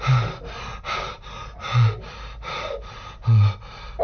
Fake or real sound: real